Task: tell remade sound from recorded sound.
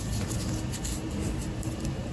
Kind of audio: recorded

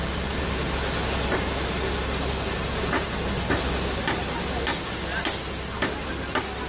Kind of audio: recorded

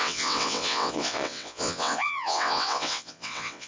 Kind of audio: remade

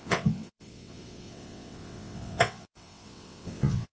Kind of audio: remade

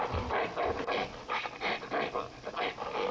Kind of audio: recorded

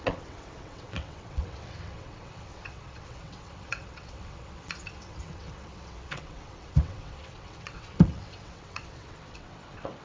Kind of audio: remade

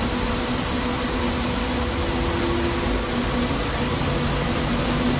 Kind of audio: recorded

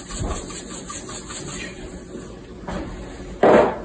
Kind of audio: recorded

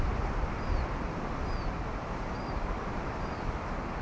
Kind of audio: recorded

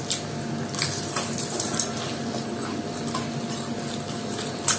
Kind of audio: recorded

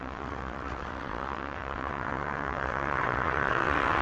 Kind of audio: remade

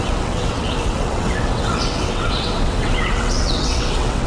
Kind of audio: remade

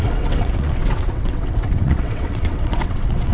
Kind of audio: remade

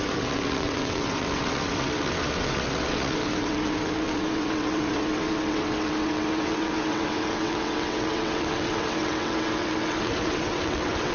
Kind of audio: remade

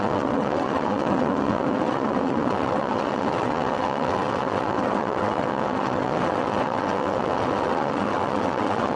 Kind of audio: remade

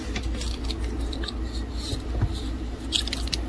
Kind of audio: recorded